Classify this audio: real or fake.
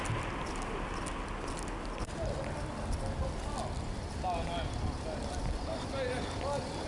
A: real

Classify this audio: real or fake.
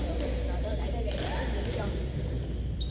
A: fake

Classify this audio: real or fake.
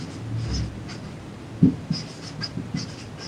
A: real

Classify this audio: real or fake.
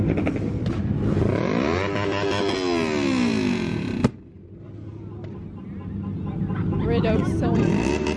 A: real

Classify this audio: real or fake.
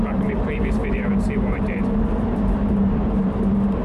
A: fake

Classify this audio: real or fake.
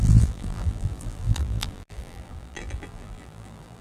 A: fake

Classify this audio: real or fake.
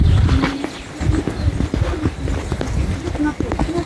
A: real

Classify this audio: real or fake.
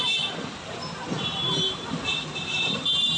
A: fake